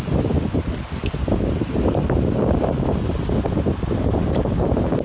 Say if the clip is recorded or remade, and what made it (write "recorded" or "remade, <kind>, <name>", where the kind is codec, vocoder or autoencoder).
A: recorded